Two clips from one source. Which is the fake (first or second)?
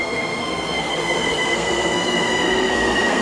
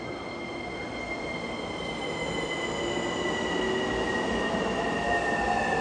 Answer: first